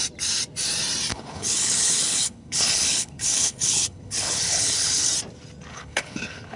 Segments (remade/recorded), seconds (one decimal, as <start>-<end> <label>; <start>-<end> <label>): 0.0-1.1 recorded; 1.1-5.1 remade; 5.1-5.7 recorded; 5.7-6.6 remade